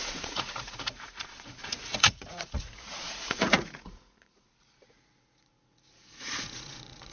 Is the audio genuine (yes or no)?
no